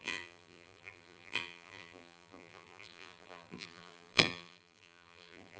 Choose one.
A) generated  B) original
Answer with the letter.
A